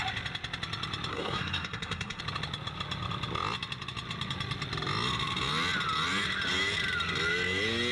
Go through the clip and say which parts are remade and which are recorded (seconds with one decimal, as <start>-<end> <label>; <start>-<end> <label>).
0.0-1.1 recorded; 1.1-2.2 remade; 2.2-7.9 recorded